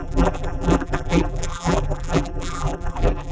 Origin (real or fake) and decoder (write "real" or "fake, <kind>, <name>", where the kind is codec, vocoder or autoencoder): fake, vocoder, BigVGAN v2